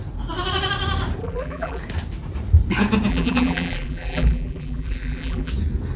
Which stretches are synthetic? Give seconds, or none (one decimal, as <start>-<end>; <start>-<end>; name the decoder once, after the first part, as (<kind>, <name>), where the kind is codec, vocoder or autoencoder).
1.2-1.8 (vocoder, BigVGAN v2); 3.1-5.5